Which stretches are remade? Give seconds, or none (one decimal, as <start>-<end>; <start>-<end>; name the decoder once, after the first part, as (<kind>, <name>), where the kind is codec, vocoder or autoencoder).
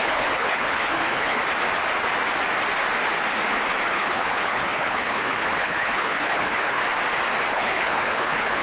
0.0-1.4 (codec, HILCodec); 3.9-6.8; 7.5-8.6